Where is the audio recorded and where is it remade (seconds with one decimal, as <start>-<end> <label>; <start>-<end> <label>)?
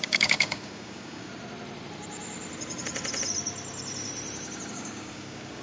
0.0-1.3 remade; 1.3-4.7 recorded; 4.7-5.6 remade